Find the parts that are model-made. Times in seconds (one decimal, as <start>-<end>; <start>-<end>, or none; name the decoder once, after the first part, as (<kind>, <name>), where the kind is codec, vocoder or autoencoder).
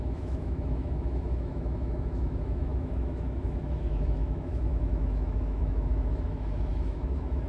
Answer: 0.0-7.5 (autoencoder, DAC-VAE)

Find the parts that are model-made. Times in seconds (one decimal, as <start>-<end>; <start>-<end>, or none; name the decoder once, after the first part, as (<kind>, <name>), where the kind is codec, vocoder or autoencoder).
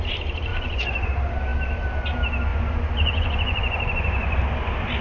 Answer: 0.5-1.1 (vocoder, Vocos); 2.5-4.4